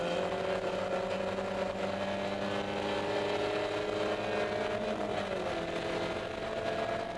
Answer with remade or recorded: recorded